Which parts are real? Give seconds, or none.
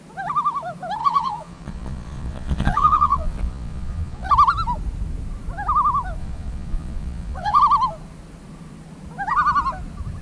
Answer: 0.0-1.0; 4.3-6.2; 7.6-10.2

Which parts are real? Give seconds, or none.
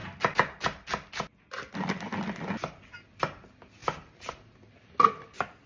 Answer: 0.0-5.7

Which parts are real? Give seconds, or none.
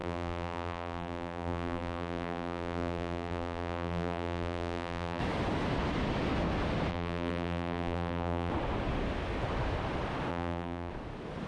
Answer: 5.2-6.9; 8.5-10.3; 10.9-11.5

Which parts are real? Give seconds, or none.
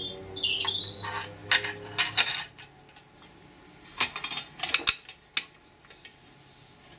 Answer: 0.0-7.0